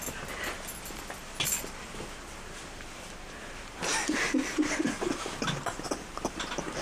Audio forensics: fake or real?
real